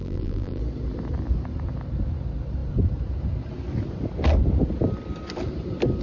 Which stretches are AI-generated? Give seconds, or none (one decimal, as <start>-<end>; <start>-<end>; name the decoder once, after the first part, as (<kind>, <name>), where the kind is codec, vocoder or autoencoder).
0.0-0.6 (vocoder, BigVGAN v2)